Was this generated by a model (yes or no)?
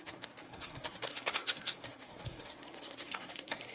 yes